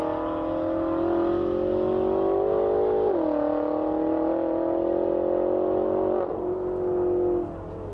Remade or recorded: recorded